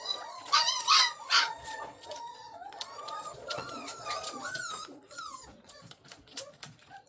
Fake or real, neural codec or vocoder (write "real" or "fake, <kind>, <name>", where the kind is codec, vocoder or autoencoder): fake, vocoder, Vocos